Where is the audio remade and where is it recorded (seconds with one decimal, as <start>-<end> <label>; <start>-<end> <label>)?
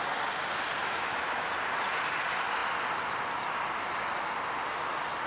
0.0-0.8 recorded; 0.8-1.5 remade; 1.5-5.3 recorded